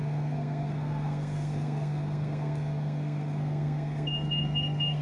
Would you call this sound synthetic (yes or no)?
yes